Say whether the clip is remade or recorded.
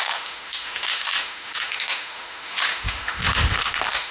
remade